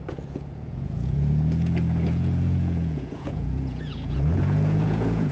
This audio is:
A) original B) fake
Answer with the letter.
B